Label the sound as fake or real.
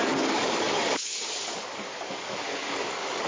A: fake